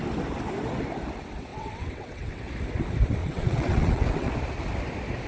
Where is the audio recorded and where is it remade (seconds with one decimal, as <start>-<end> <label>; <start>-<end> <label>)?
0.0-1.5 recorded; 1.5-2.5 remade; 2.5-3.2 recorded; 3.2-4.3 remade; 4.3-5.3 recorded